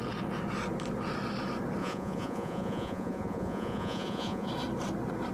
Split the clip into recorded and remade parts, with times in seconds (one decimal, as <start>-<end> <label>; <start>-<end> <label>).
0.0-1.8 recorded; 1.8-4.5 remade; 4.5-5.3 recorded